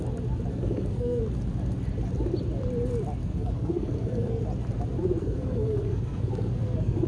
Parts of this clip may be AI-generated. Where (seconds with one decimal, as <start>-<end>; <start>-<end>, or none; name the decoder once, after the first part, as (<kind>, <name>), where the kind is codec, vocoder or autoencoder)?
0.5-1.2 (codec, SNAC); 3.2-4.4; 5.2-7.1